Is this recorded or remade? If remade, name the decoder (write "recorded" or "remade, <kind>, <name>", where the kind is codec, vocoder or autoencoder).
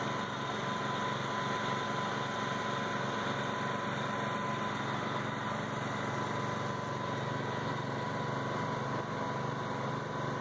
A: recorded